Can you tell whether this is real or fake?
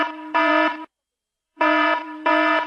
fake